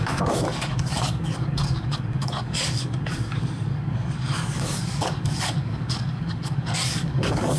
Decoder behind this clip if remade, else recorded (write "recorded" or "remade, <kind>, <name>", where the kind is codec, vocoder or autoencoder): remade, codec, DAC